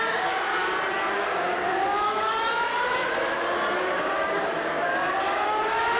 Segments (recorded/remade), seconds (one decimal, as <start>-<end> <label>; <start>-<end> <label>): 0.0-0.5 remade; 0.5-1.1 recorded; 1.1-2.7 remade; 2.7-3.8 recorded; 3.8-6.0 remade